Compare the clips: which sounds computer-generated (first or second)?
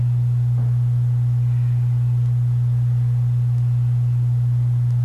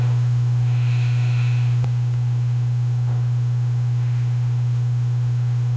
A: second